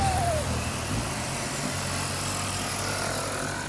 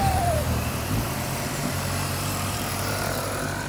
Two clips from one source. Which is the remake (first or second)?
second